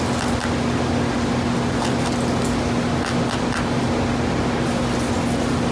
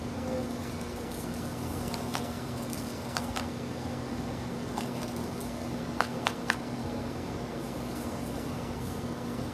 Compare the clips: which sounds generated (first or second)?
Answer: second